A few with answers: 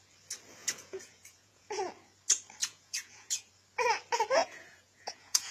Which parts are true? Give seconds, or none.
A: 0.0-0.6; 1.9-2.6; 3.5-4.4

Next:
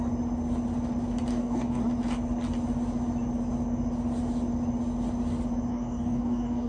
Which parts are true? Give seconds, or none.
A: 0.0-1.3; 1.8-5.7

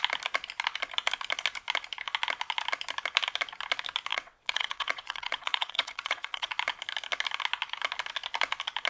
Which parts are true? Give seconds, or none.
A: 0.0-4.1; 6.5-8.9

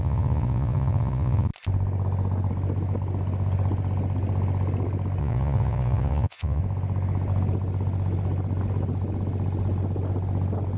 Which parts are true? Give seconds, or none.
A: 1.5-5.2; 6.6-10.8